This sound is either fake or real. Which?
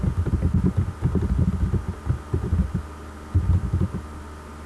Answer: real